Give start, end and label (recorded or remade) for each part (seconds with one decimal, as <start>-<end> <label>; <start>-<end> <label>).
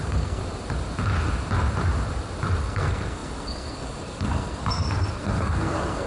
0.0-0.4 remade; 0.4-2.6 recorded; 2.6-6.1 remade